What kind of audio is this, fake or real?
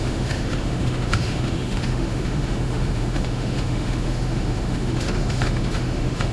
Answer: fake